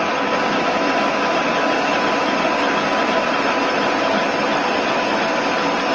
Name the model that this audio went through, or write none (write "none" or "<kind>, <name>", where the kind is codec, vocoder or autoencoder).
none